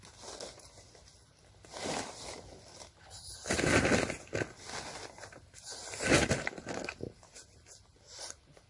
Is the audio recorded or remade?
recorded